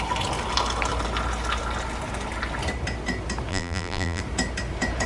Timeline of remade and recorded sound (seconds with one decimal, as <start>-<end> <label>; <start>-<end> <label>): 0.0-3.5 recorded; 3.5-4.2 remade; 4.2-5.1 recorded

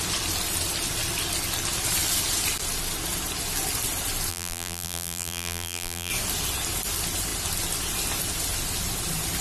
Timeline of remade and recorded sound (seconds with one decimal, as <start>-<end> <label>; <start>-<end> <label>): 0.0-4.3 recorded; 4.3-6.1 remade; 6.1-9.4 recorded

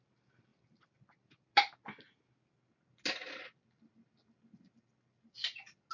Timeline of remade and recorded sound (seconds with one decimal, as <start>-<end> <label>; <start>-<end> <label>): 0.0-5.9 recorded